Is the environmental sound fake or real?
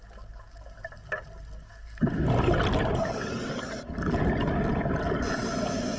real